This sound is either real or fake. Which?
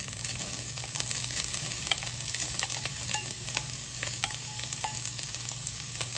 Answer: fake